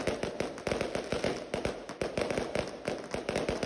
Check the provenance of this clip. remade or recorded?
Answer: recorded